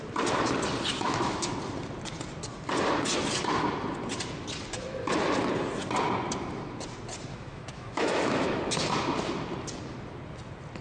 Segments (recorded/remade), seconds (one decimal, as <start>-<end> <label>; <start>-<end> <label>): 0.0-0.9 recorded; 0.9-1.5 remade; 1.5-7.3 recorded; 7.3-8.6 remade; 8.6-10.8 recorded